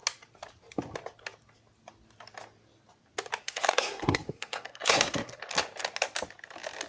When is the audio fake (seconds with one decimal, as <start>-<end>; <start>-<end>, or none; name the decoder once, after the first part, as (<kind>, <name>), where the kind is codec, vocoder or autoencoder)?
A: 3.4-5.4 (codec, SNAC)